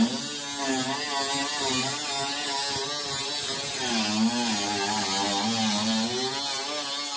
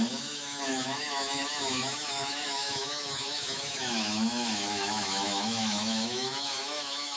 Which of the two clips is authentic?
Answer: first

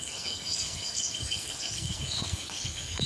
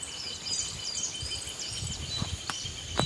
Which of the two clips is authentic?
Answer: second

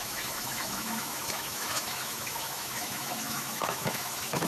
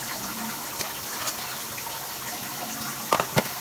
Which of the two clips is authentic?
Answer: second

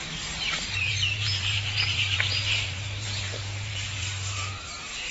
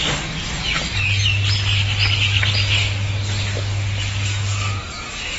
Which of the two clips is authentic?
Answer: second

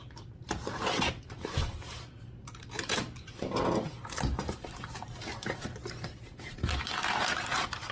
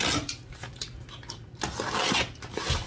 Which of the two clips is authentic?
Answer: second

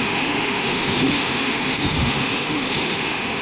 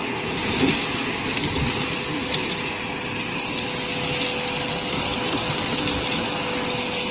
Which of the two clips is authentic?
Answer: second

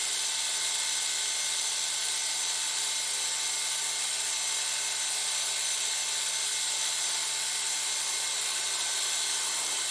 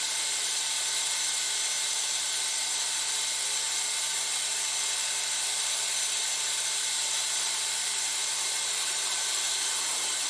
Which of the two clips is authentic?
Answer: first